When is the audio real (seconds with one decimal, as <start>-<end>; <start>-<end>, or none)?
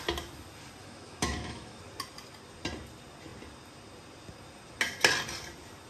0.0-0.8; 1.8-5.9